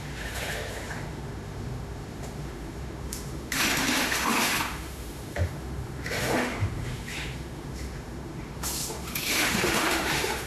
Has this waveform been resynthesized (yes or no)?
yes